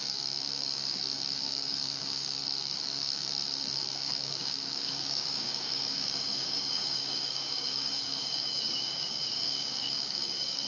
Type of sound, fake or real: fake